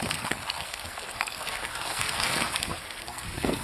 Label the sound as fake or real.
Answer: fake